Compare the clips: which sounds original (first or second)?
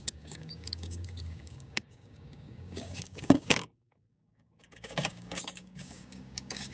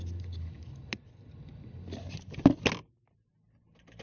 second